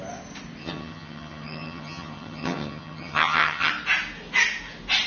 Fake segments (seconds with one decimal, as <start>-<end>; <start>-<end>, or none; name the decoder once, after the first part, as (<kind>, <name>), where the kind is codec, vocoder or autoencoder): 0.6-3.7 (vocoder, HiFi-GAN)

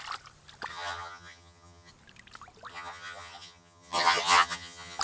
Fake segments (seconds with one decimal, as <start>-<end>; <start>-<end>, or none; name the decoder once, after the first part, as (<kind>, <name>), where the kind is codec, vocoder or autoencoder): 0.7-1.9 (vocoder, HiFi-GAN); 2.7-5.0

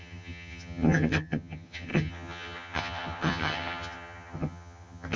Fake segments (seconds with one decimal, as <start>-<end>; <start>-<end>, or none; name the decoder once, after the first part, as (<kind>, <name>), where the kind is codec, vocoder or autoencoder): 0.0-5.2 (vocoder, HiFi-GAN)

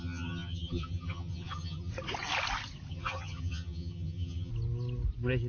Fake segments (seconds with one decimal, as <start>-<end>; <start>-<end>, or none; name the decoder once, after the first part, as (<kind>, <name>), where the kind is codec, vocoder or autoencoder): 0.0-1.9 (vocoder, HiFi-GAN); 2.9-4.5